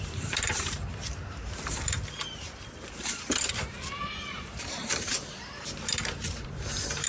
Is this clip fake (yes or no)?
yes